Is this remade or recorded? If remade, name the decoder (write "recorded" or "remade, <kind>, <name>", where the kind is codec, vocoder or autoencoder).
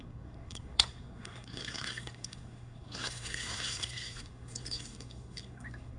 remade, codec, SNAC